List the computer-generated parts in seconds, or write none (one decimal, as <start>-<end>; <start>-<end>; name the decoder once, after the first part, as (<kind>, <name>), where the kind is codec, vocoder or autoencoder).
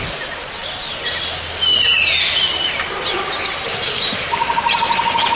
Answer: none